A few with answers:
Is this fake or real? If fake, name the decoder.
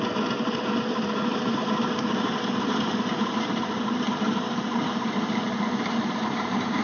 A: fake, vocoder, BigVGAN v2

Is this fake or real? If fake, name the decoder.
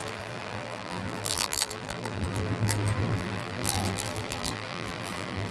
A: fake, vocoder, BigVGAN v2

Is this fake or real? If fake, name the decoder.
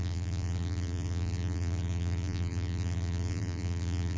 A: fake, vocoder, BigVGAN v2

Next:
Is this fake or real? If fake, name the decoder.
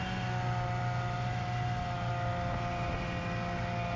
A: real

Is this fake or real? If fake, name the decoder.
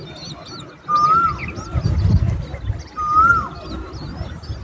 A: real